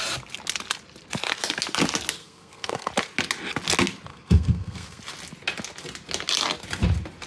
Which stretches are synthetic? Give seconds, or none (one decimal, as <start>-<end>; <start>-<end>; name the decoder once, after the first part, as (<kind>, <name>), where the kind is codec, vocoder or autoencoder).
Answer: 2.2-2.9 (codec, SNAC); 4.1-5.0